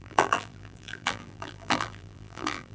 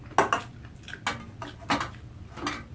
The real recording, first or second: second